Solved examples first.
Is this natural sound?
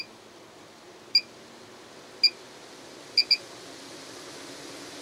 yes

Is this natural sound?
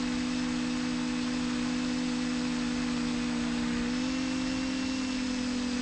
yes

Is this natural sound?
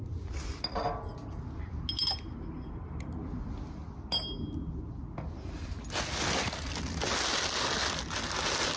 yes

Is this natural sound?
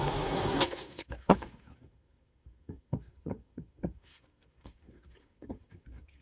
no